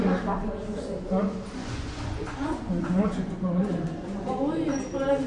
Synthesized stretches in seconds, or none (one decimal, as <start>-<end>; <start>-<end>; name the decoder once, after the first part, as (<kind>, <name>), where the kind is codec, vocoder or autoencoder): 1.6-4.8 (vocoder, Vocos)